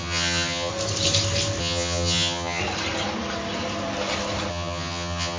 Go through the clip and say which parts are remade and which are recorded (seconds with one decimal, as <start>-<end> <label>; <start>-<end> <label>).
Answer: 0.0-0.7 remade; 0.7-1.6 recorded; 1.6-2.6 remade; 2.6-4.5 recorded; 4.5-5.4 remade